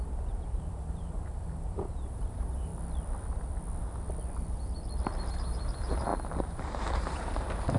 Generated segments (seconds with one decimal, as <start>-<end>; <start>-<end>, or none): 0.0-2.7; 5.3-7.8